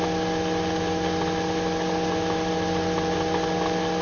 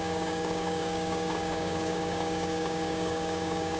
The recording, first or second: first